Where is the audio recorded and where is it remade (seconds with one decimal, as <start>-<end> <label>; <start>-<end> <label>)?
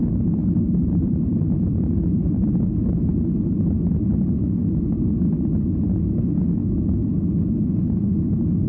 0.0-0.4 recorded; 0.4-3.7 remade; 3.7-8.7 recorded